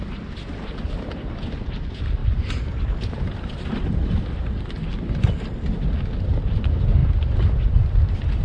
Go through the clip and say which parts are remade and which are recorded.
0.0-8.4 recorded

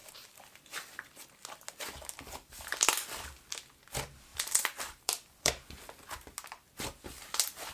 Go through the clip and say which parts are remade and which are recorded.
0.0-0.5 remade; 0.5-4.3 recorded; 4.3-5.5 remade; 5.5-7.7 recorded

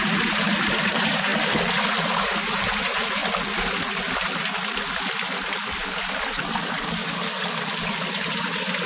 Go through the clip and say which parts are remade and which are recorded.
0.0-1.3 remade; 1.3-2.2 recorded; 2.2-3.2 remade; 3.2-7.9 recorded; 7.9-8.9 remade

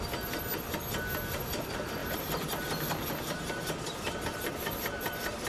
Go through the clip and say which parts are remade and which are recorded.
0.0-2.0 recorded; 2.0-5.5 remade

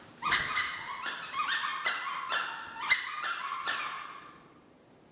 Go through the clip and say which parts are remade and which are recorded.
0.0-1.7 remade; 1.7-4.4 recorded; 4.4-5.1 remade

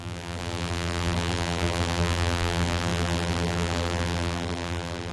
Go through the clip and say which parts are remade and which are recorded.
0.0-5.1 remade

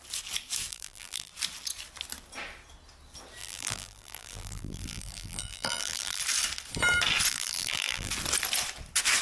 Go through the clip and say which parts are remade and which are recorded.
0.0-0.7 recorded; 0.7-1.3 remade; 1.3-3.4 recorded; 3.4-6.2 remade; 6.2-7.3 recorded; 7.3-8.1 remade; 8.1-9.2 recorded

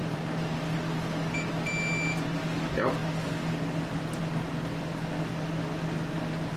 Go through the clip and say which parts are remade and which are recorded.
0.0-0.5 remade; 0.5-6.6 recorded